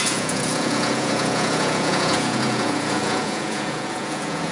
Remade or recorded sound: remade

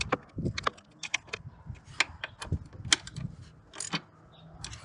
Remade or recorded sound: recorded